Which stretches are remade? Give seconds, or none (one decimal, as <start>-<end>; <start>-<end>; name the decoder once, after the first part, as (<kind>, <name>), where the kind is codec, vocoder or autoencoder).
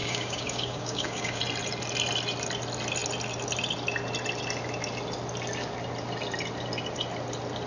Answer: 0.0-1.4 (codec, DAC)